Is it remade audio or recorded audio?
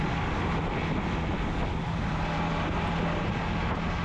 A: recorded